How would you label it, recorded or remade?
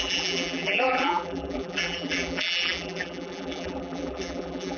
remade